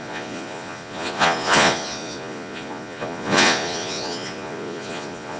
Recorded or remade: remade